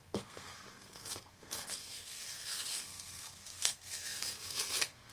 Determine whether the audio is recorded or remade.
remade